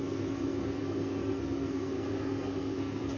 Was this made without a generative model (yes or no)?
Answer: no